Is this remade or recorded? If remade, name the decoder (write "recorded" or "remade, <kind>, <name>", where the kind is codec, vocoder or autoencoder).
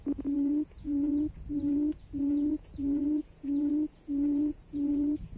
remade, vocoder, Vocos